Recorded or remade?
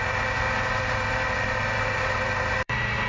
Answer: remade